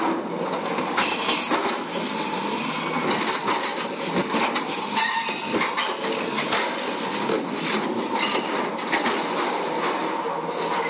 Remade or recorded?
recorded